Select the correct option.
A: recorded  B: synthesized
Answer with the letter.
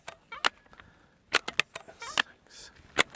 A